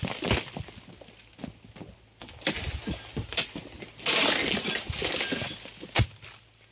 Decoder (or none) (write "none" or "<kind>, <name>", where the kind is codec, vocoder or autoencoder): none